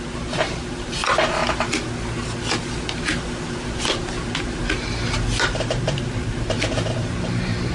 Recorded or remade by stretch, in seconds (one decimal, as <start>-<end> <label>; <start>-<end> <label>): 0.0-1.0 remade; 1.0-5.4 recorded; 5.4-7.7 remade